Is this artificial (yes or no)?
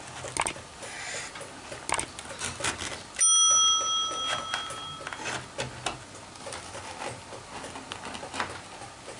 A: no